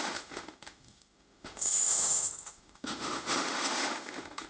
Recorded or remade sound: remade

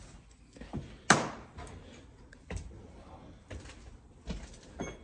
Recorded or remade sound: recorded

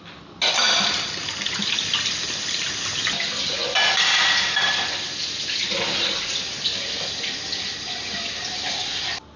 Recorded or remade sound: recorded